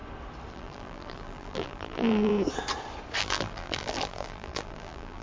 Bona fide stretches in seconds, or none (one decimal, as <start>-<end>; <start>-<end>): 0.0-0.5; 2.3-3.2